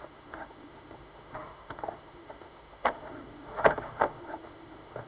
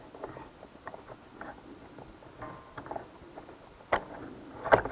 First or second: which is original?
second